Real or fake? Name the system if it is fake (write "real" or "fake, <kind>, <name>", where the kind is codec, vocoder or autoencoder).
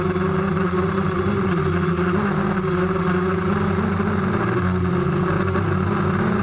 real